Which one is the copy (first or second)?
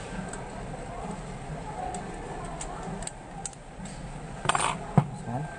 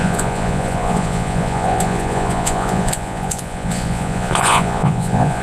second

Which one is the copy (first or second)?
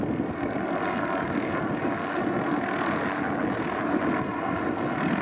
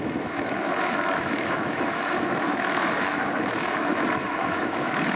second